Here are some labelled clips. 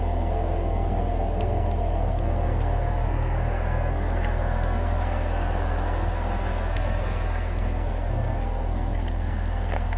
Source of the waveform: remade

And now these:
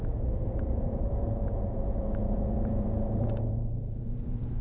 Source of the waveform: remade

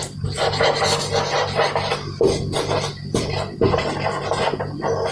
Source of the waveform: recorded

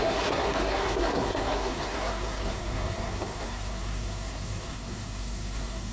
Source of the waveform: remade